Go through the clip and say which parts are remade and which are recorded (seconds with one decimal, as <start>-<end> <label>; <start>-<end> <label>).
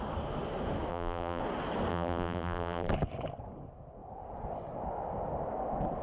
0.0-0.9 recorded; 0.9-1.4 remade; 1.4-1.9 recorded; 1.9-2.9 remade; 2.9-6.0 recorded